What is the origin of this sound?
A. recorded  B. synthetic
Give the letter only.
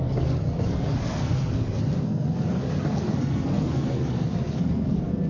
B